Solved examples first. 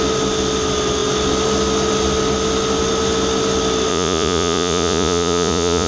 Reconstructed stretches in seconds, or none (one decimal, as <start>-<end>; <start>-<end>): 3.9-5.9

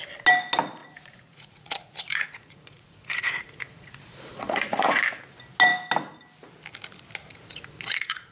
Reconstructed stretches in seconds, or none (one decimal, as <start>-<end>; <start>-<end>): 0.8-5.0; 7.2-8.3

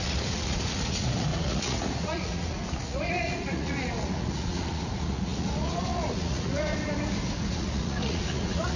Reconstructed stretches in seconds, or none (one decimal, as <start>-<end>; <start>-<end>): 0.0-6.7; 7.5-8.8

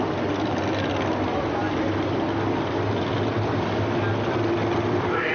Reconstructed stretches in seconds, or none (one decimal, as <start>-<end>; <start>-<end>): none

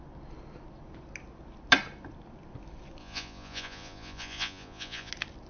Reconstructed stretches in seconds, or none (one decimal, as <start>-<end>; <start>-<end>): 3.0-5.1